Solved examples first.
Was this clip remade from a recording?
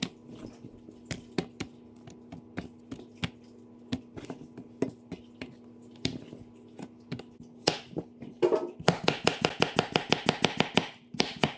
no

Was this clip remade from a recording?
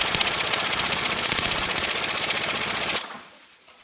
yes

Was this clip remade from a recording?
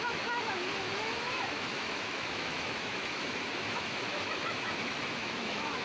yes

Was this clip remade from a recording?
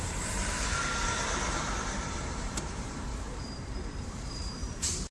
yes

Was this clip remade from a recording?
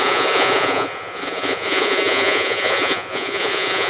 yes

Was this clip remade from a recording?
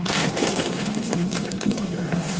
yes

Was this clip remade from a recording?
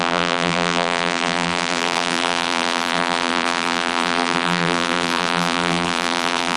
yes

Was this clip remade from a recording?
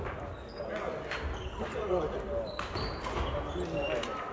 no